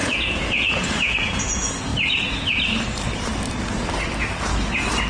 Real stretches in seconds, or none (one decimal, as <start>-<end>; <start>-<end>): 1.9-5.1